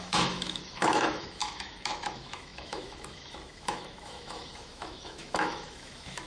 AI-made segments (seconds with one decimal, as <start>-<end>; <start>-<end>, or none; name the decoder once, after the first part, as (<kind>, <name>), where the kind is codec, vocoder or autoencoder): 0.0-6.3 (autoencoder, DAC-VAE)